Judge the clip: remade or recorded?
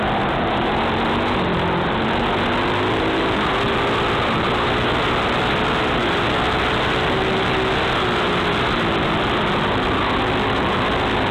recorded